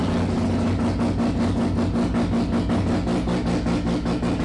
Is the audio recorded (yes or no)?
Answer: yes